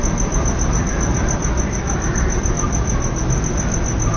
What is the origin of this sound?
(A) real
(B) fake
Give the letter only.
A